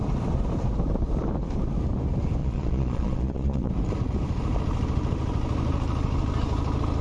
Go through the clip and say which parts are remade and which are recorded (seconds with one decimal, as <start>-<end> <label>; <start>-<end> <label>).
0.0-2.4 recorded; 2.4-3.7 remade; 3.7-7.0 recorded